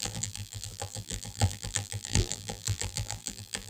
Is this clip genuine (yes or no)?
no